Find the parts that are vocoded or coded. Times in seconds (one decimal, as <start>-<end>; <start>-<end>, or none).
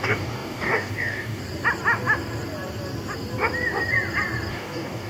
0.0-1.4; 4.5-5.1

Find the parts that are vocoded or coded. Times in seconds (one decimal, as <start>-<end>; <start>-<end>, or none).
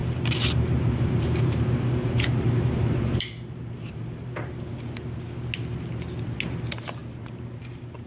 0.0-4.3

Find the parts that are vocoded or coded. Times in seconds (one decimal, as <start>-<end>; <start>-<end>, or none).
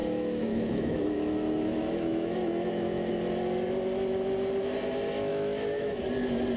0.0-3.1; 5.3-6.0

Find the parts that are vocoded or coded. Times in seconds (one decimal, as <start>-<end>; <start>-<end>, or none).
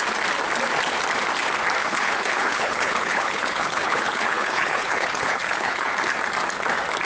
1.8-5.9